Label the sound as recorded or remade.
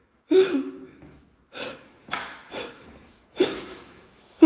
remade